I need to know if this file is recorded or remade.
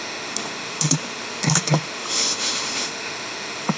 remade